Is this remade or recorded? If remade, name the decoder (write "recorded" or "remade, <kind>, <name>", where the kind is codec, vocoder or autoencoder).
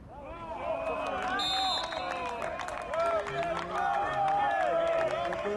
recorded